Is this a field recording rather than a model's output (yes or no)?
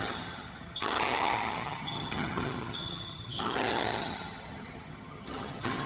no